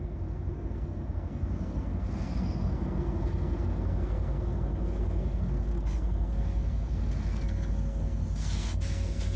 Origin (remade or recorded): remade